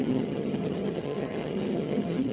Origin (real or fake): fake